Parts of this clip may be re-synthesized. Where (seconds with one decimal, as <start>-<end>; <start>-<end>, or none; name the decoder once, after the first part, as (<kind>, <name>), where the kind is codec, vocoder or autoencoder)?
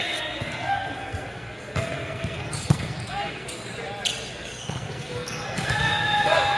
0.0-3.7 (codec, SNAC); 4.3-6.6